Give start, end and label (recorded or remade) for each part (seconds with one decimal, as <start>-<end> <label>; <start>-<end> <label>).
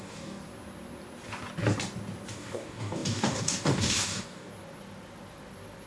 0.0-0.4 remade; 0.4-2.3 recorded; 2.3-4.5 remade; 4.5-5.9 recorded